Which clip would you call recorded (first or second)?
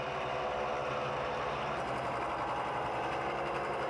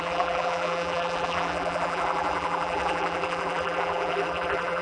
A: first